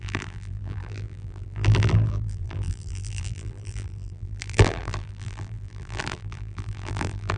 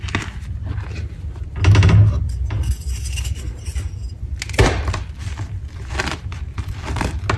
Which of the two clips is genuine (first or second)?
second